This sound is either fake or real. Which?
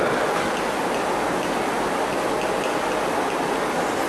real